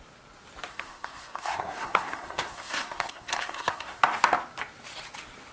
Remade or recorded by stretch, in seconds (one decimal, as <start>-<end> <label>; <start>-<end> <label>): 0.0-0.7 recorded; 0.7-4.0 remade; 4.0-5.5 recorded